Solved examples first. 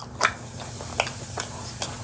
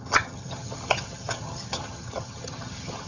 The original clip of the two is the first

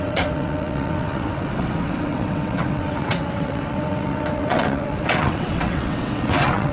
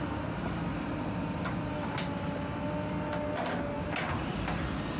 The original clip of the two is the second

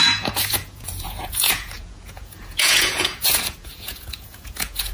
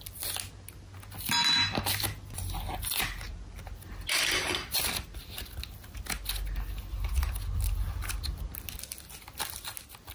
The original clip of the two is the second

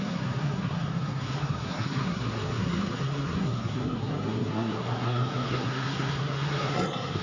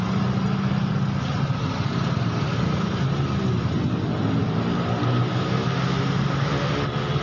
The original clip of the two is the second